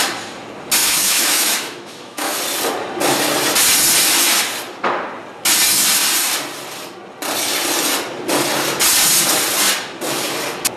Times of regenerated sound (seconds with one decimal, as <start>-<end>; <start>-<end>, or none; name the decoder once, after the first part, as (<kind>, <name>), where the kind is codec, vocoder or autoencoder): 0.8-2.4 (autoencoder, DAC-VAE)